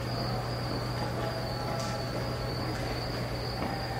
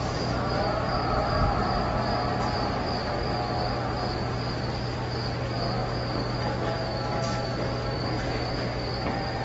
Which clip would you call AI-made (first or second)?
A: first